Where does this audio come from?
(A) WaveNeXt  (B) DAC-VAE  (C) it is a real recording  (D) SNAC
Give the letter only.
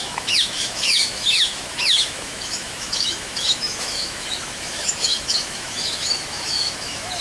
B